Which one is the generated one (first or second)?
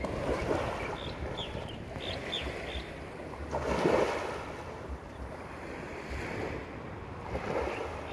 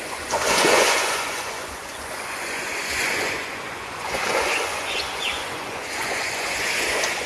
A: second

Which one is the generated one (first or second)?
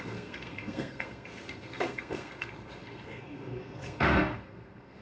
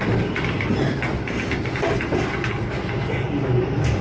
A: first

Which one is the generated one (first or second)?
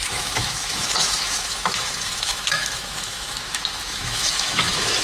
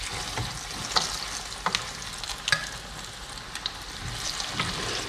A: first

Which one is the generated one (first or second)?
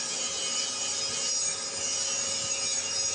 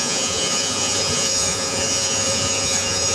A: second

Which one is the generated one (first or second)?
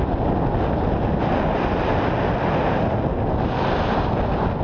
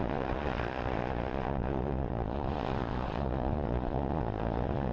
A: second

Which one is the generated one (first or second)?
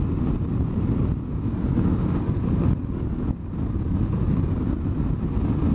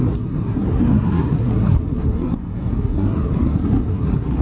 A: second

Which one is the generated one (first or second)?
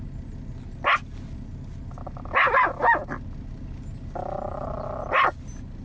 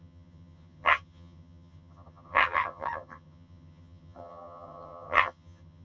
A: second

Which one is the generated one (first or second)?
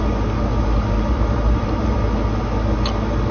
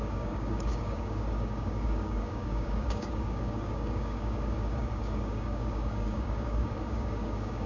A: second